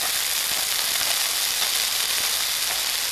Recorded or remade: recorded